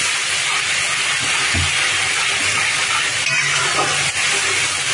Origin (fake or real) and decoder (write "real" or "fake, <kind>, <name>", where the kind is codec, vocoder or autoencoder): real